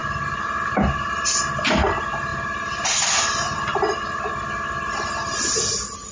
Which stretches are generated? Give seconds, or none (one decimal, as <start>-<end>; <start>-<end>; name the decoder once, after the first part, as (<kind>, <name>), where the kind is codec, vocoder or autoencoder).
none